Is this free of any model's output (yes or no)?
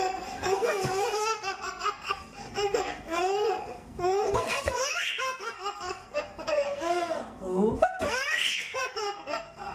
no